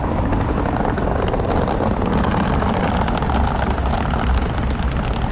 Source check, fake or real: real